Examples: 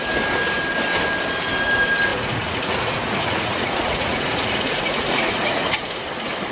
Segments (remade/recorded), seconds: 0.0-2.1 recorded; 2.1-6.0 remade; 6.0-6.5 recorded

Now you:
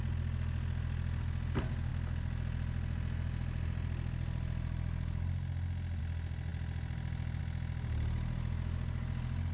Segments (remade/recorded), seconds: 0.0-9.5 recorded

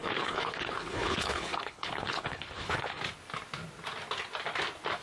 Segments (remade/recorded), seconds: 0.0-3.0 remade; 3.0-5.0 recorded

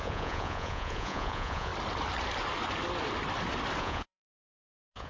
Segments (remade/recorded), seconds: 0.0-1.7 remade; 1.7-3.8 recorded; 3.8-5.1 remade

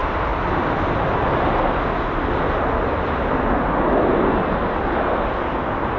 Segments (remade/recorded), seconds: 0.0-6.0 recorded

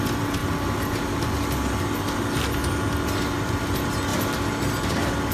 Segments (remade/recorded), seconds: 0.0-5.3 recorded